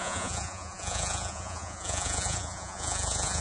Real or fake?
fake